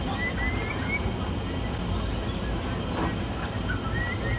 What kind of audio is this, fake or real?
real